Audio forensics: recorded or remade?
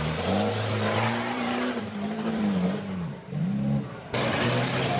remade